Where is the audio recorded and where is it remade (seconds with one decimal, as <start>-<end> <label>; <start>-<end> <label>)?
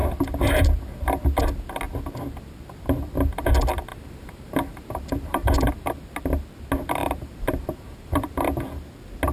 0.0-3.9 recorded; 3.9-5.7 remade; 5.7-7.0 recorded; 7.0-8.4 remade; 8.4-9.3 recorded